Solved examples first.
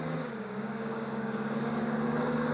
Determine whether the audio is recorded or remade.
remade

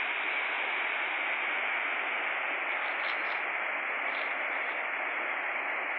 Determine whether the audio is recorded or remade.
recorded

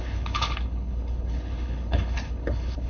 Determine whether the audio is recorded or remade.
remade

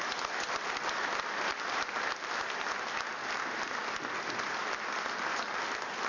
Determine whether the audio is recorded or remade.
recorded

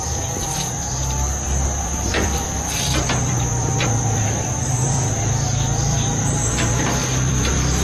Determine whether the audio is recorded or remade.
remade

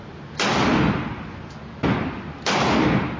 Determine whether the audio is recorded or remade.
recorded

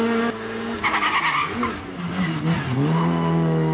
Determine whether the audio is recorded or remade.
recorded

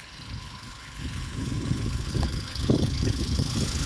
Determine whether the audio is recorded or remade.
remade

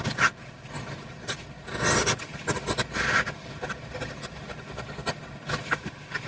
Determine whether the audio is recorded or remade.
recorded